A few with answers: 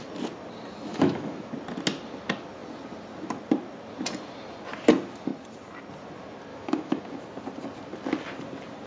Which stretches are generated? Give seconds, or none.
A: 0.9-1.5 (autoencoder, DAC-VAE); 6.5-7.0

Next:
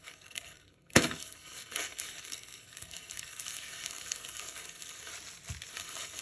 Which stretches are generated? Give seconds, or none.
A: 0.0-5.1 (codec, SNAC); 5.7-6.2

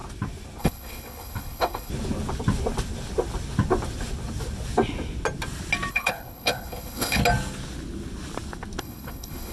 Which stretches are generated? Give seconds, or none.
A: 0.6-1.9 (codec, HILCodec); 5.9-7.2; 8.8-9.5